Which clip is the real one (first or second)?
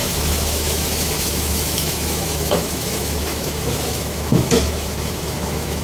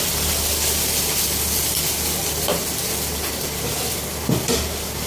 second